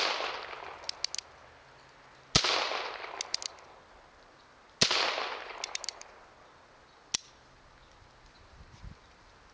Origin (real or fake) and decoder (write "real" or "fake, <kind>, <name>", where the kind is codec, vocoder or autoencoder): real